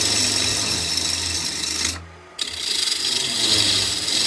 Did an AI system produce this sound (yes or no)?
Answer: no